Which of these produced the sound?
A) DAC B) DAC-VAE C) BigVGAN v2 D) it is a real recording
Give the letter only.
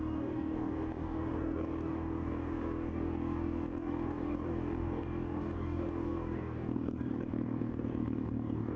A